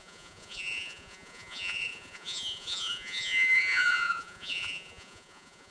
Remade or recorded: remade